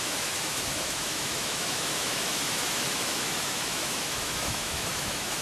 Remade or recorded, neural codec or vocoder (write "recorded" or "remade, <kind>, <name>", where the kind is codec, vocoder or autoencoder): remade, autoencoder, DAC-VAE